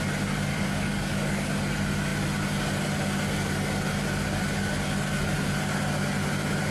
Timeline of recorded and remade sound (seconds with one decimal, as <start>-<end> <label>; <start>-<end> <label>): 0.0-0.5 recorded; 0.5-1.5 remade; 1.5-6.7 recorded